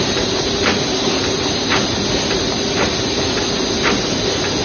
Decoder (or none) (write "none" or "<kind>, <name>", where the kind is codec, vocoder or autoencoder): none